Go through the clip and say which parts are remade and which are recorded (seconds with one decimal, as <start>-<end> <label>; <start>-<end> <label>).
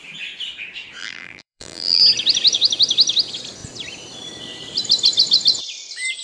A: 0.0-1.0 recorded; 1.0-2.0 remade; 2.0-6.2 recorded